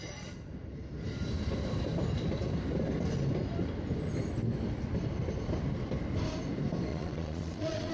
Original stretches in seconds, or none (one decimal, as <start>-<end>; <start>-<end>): 0.0-6.9